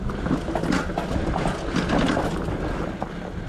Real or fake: real